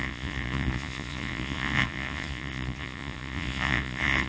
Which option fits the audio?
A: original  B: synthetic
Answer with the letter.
B